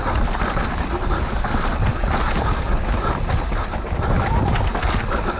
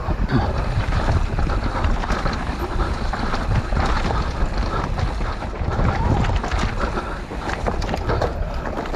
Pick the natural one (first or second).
first